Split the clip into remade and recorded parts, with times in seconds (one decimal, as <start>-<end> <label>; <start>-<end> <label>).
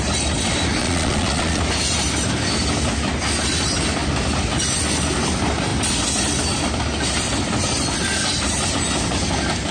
0.0-0.8 recorded; 0.8-1.6 remade; 1.6-9.7 recorded